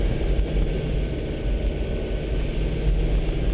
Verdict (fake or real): real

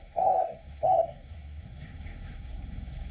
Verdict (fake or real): fake